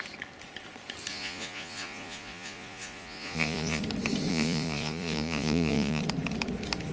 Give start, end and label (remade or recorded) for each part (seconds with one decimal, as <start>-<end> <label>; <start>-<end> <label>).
0.0-1.1 recorded; 1.1-3.8 remade; 3.8-4.3 recorded; 4.3-6.0 remade; 6.0-6.9 recorded